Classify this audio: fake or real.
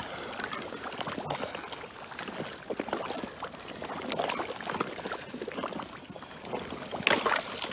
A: real